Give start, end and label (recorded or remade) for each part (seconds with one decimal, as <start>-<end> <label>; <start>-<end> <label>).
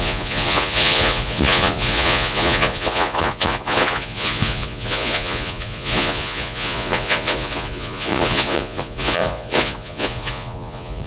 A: 0.0-11.1 remade